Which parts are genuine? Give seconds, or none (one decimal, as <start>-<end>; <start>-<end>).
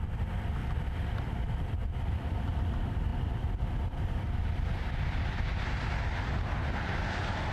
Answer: 0.0-0.6; 1.2-3.1; 5.5-7.5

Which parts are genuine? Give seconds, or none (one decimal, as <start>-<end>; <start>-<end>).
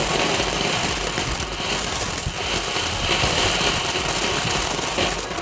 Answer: 0.0-5.4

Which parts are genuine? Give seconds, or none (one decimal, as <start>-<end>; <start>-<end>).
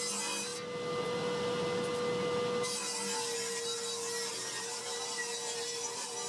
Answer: 0.0-6.3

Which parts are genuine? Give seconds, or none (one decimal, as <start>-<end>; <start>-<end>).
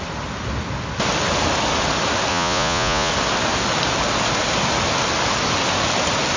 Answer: 0.0-2.3; 3.1-6.4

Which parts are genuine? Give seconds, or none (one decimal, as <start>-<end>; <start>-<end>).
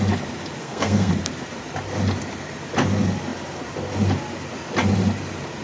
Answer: 0.0-0.6; 1.1-5.6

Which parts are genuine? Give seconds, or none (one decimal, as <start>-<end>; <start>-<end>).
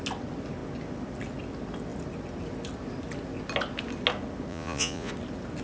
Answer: 0.0-4.5; 5.1-5.6